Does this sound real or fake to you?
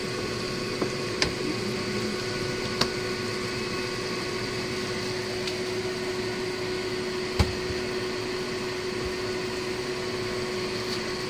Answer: real